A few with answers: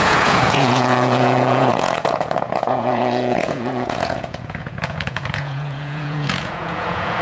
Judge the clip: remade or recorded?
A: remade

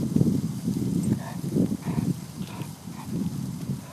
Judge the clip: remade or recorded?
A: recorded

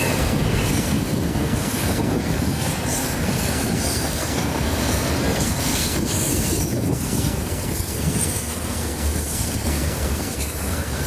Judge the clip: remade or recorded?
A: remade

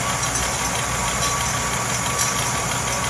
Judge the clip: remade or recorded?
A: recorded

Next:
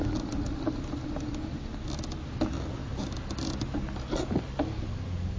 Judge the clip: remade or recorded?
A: recorded